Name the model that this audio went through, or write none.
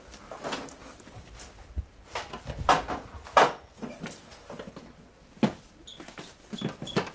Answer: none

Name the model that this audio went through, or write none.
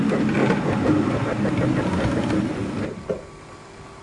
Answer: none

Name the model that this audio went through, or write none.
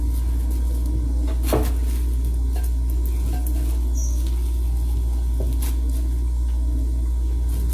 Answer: none